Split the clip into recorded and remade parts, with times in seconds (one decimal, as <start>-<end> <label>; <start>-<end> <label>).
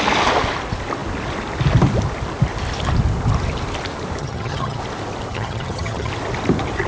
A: 0.0-4.2 recorded; 4.2-4.8 remade; 4.8-5.3 recorded; 5.3-6.1 remade; 6.1-6.9 recorded